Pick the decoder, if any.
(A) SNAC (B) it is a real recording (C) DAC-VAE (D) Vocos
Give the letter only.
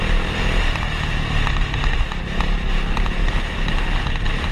B